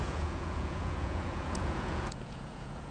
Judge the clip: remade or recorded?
remade